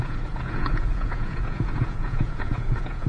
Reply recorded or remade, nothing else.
remade